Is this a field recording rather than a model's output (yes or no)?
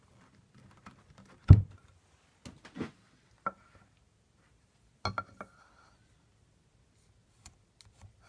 yes